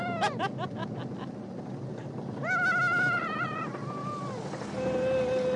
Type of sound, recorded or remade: recorded